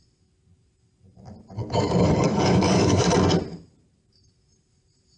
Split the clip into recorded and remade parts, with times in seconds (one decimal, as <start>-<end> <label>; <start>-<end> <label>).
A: 0.0-1.6 recorded; 1.6-3.1 remade; 3.1-5.2 recorded